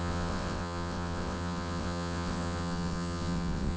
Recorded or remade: remade